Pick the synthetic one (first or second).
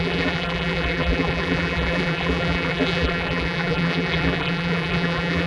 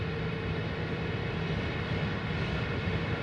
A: first